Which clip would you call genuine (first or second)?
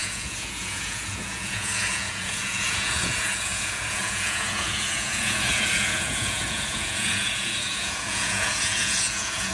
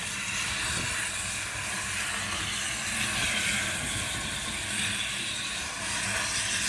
second